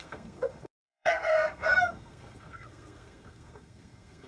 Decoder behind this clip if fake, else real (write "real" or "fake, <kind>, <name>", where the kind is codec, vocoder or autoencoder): fake, codec, SNAC